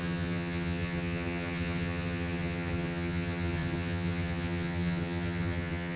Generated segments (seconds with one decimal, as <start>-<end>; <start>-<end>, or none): 0.0-6.0